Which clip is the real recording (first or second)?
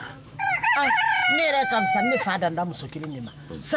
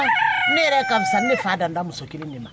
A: second